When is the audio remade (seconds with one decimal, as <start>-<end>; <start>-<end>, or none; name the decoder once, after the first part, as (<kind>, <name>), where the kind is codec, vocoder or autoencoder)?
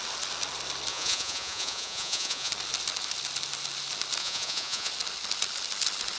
0.9-2.5 (vocoder, Vocos); 4.2-4.9